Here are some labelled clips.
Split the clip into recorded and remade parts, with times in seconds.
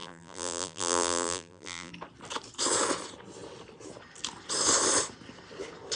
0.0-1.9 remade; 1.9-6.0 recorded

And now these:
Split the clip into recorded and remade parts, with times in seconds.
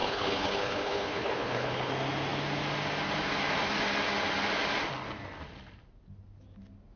0.0-1.9 remade; 1.9-7.0 recorded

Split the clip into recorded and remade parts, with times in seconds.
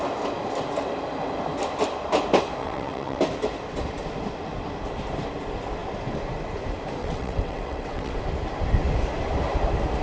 0.0-2.6 recorded; 2.6-3.2 remade; 3.2-7.0 recorded; 7.0-8.2 remade; 8.2-10.0 recorded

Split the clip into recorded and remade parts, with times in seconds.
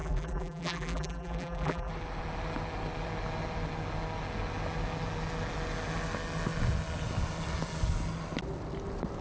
0.0-1.9 remade; 1.9-9.2 recorded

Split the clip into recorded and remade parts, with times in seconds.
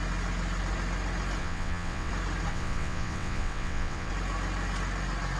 0.0-1.4 recorded; 1.4-2.1 remade; 2.1-2.5 recorded; 2.5-4.1 remade; 4.1-5.4 recorded